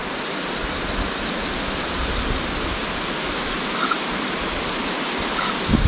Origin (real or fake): real